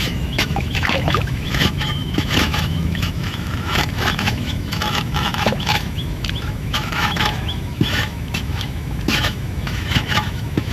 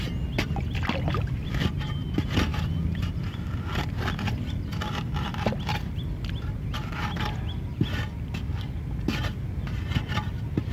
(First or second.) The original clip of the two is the second